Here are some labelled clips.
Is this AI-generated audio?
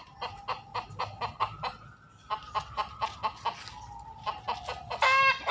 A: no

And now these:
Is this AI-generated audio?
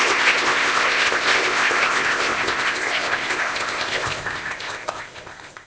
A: yes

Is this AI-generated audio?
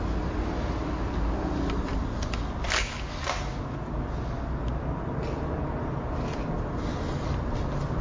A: no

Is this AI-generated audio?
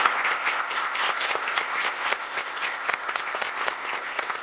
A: yes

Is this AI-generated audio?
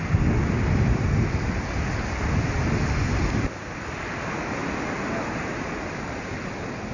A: no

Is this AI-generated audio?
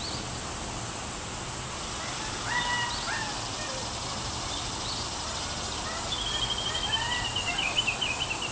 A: no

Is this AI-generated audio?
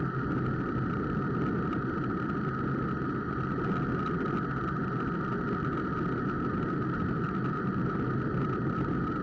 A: no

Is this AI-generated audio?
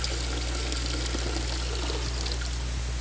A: no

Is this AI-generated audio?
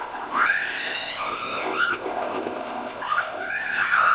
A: yes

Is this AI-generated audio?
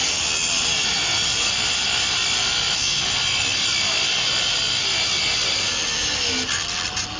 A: no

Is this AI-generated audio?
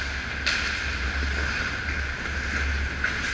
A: no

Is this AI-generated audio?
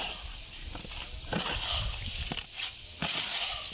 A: no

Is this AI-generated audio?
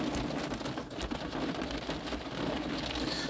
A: no